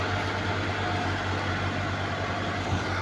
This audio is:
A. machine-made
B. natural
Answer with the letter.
B